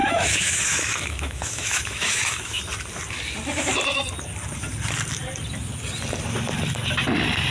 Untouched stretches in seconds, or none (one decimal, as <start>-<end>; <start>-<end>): 2.6-7.5